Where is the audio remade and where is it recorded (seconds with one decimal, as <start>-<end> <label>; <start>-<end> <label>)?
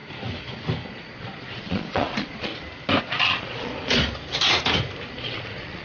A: 0.0-1.0 recorded; 1.0-2.5 remade; 2.5-3.0 recorded; 3.0-3.7 remade; 3.7-5.1 recorded; 5.1-5.8 remade